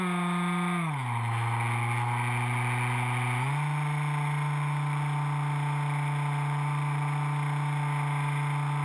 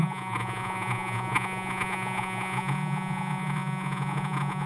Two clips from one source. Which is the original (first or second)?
first